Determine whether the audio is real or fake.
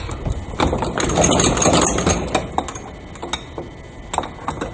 real